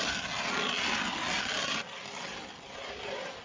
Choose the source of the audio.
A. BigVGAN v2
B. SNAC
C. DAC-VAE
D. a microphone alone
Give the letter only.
D